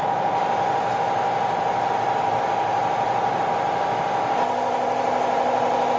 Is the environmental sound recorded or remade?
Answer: recorded